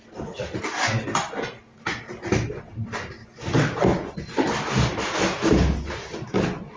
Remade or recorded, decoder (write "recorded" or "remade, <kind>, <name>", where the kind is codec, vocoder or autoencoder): recorded